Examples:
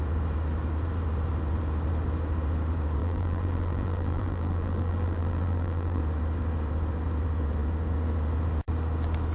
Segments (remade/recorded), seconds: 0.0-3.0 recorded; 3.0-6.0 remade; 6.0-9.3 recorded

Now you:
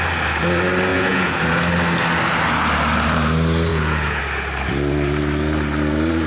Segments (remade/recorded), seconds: 0.0-0.9 recorded; 0.9-1.4 remade; 1.4-3.7 recorded; 3.7-4.2 remade; 4.2-6.3 recorded

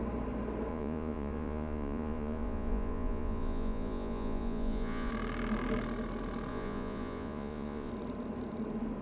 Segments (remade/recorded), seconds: 0.0-0.7 recorded; 0.7-5.1 remade; 5.1-6.5 recorded; 6.5-7.9 remade; 7.9-9.0 recorded

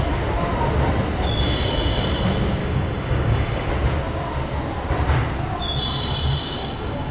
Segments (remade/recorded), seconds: 0.0-2.6 recorded; 2.6-3.7 remade; 3.7-6.4 recorded; 6.4-7.1 remade

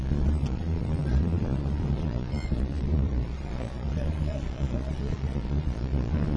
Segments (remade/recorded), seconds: 0.0-6.4 remade